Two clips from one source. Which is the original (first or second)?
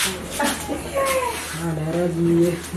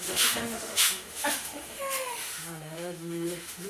first